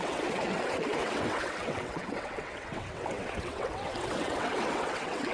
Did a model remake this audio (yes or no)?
yes